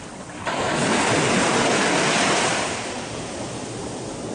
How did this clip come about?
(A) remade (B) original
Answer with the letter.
B